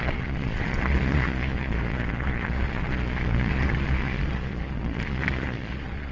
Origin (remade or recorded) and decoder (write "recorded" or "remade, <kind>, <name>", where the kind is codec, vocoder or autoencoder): remade, vocoder, Vocos